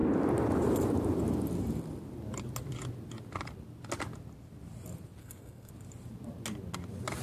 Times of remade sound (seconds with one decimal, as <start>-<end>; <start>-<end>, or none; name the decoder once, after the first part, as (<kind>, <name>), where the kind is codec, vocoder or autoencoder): 5.2-5.7 (codec, SNAC)